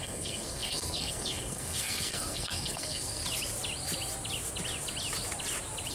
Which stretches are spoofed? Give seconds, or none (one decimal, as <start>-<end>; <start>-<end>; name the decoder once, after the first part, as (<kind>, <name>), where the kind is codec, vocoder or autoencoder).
0.0-3.2 (codec, SNAC)